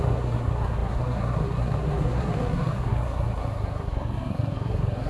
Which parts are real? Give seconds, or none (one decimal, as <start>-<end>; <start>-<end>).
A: none